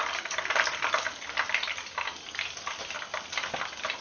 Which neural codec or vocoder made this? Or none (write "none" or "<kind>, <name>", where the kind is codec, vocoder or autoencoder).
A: none